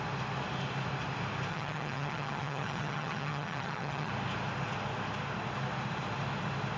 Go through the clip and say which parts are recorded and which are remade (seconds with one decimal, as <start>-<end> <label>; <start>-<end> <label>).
0.0-1.5 recorded; 1.5-4.1 remade; 4.1-6.8 recorded